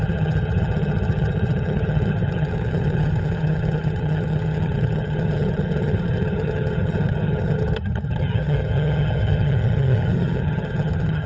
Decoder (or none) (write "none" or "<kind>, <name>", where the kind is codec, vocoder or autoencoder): vocoder, HiFi-GAN